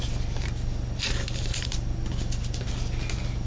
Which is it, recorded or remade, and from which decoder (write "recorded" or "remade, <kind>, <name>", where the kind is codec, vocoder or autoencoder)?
recorded